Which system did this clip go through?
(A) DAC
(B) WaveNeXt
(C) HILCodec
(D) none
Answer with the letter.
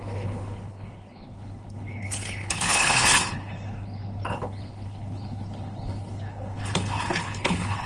C